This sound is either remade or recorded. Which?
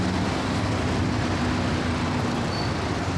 recorded